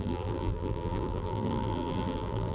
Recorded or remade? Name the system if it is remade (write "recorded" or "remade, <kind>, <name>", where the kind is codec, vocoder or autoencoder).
remade, vocoder, BigVGAN v2